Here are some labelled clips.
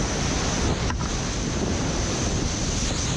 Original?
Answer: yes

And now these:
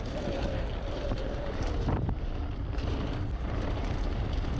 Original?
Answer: yes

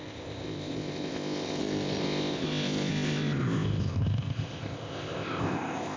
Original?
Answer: no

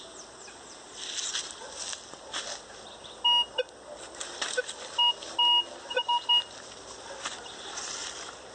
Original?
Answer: yes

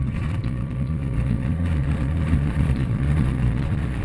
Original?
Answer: no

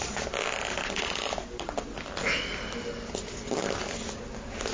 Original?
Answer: yes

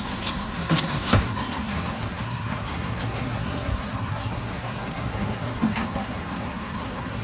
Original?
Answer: no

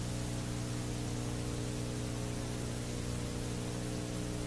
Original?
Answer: yes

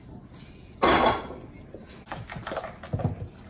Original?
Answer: yes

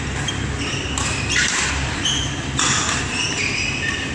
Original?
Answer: no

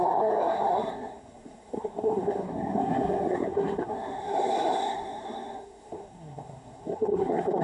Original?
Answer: no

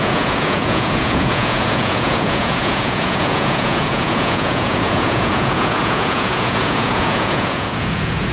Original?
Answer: no